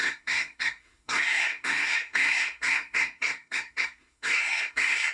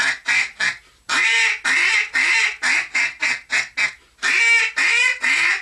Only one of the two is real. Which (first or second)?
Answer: second